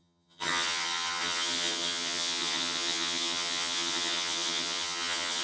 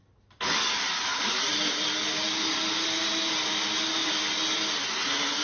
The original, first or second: second